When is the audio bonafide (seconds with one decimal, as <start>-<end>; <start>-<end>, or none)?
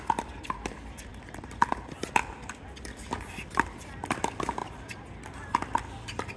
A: 0.0-6.4